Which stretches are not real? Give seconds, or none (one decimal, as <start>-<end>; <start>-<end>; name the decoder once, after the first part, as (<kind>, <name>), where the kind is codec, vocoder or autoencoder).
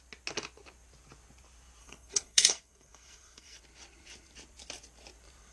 1.8-3.6 (codec, SNAC)